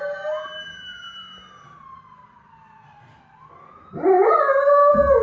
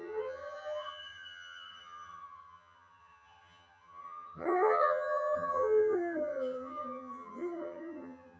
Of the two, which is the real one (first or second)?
first